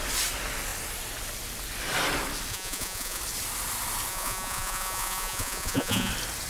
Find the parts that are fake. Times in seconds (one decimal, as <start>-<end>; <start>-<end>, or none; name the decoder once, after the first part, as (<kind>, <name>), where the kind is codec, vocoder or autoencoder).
2.5-3.2 (vocoder, Vocos); 4.1-6.1